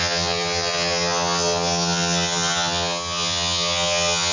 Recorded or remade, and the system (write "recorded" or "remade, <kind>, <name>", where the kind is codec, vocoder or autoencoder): remade, vocoder, HiFi-GAN